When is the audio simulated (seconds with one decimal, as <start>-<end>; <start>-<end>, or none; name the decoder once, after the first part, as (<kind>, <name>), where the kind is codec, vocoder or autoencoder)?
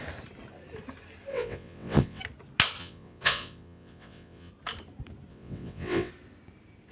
1.3-2.2 (vocoder, WaveNeXt); 2.8-4.5; 5.3-6.1